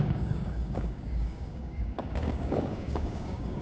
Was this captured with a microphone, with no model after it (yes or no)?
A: no